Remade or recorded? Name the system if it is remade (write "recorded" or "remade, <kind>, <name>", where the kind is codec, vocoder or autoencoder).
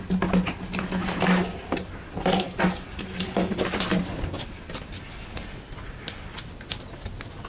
recorded